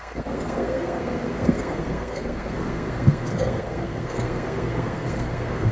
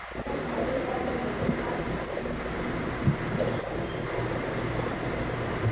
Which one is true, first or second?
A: second